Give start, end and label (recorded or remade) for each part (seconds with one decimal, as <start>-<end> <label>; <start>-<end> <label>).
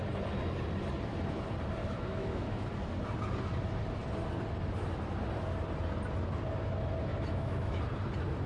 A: 0.0-1.8 recorded; 1.8-2.7 remade; 2.7-7.1 recorded; 7.1-7.8 remade; 7.8-8.5 recorded